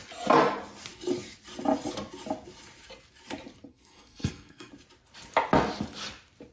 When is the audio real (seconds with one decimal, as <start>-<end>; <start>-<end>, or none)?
0.0-3.7; 4.7-6.5